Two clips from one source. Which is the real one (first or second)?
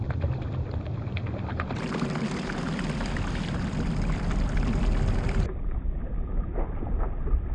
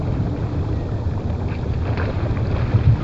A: second